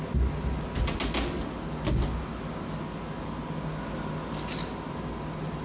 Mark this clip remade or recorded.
recorded